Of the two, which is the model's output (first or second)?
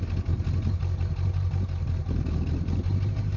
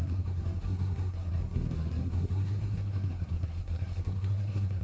second